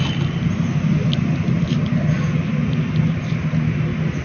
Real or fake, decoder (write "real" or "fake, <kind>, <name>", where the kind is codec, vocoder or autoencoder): real